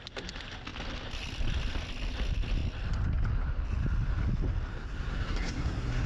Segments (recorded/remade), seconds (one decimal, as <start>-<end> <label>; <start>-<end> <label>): 0.0-4.7 recorded; 4.7-6.1 remade

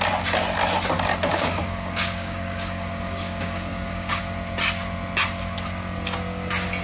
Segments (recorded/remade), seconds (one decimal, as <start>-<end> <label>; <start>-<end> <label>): 0.0-1.3 recorded; 1.3-4.2 remade; 4.2-6.8 recorded